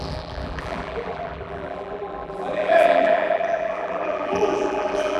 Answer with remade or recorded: remade